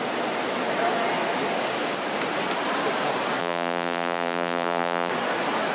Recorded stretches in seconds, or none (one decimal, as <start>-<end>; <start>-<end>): 0.0-3.4; 5.1-5.7